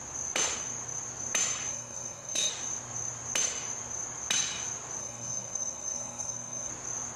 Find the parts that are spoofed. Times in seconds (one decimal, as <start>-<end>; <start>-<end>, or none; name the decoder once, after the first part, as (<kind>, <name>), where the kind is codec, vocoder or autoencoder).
1.7-2.5 (codec, SNAC); 5.0-6.7